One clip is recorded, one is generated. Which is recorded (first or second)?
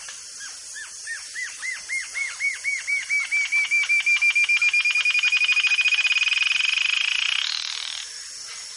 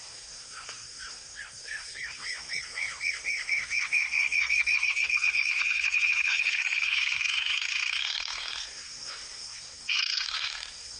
first